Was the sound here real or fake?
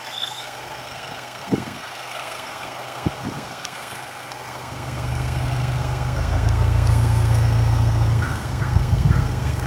fake